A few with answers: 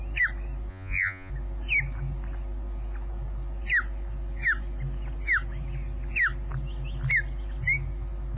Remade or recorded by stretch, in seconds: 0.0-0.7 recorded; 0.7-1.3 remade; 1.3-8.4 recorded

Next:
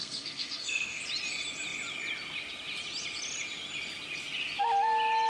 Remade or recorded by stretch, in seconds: 0.0-1.0 remade; 1.0-5.3 recorded

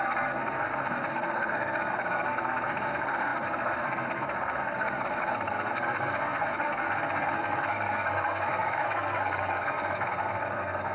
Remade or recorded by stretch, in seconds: 0.0-10.9 remade

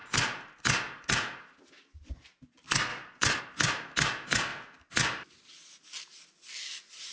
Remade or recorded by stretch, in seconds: 0.0-2.9 recorded; 2.9-3.4 remade; 3.4-7.1 recorded

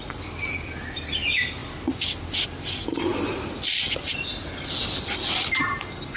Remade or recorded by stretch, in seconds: 0.0-6.2 recorded

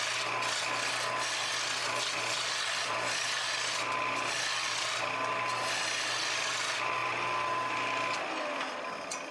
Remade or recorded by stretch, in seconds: 0.0-1.8 recorded; 1.8-3.5 remade; 3.5-9.3 recorded

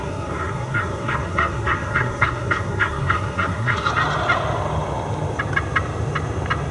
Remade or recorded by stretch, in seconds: 0.0-3.9 remade; 3.9-6.7 recorded

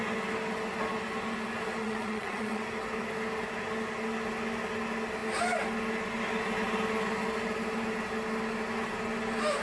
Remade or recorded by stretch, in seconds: 0.0-1.8 recorded; 1.8-2.6 remade; 2.6-9.6 recorded